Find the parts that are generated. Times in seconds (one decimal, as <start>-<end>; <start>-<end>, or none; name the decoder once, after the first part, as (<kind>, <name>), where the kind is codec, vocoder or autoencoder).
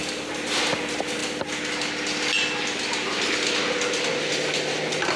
none